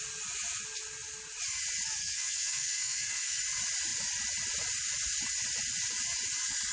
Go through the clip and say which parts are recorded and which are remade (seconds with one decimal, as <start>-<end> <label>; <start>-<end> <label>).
0.0-2.0 recorded; 2.0-3.4 remade; 3.4-6.7 recorded